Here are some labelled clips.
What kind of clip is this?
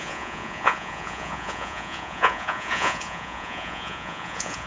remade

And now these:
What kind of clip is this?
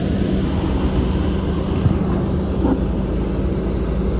recorded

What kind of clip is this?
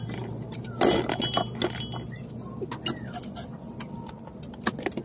recorded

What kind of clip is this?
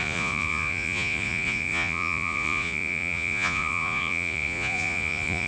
remade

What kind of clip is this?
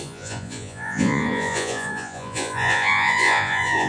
remade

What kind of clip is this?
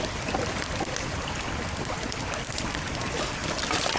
recorded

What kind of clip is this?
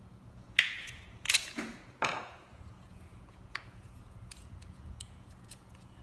remade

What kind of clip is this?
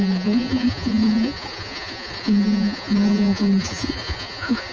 remade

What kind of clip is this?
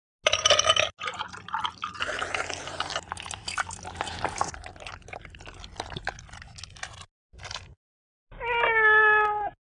recorded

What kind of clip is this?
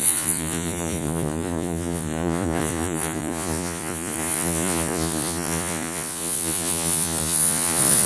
remade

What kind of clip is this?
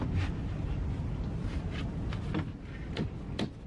recorded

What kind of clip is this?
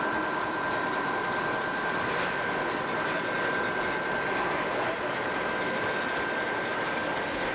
recorded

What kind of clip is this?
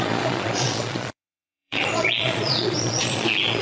remade